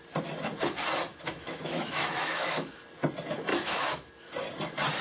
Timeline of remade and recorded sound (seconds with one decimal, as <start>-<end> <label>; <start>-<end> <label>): 0.0-1.1 recorded; 1.1-2.8 remade; 2.8-3.5 recorded; 3.5-4.1 remade; 4.1-5.0 recorded